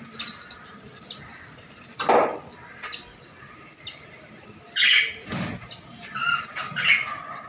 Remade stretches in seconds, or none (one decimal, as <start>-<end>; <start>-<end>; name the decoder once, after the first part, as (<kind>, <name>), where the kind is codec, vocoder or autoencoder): 5.9-6.5 (vocoder, BigVGAN v2)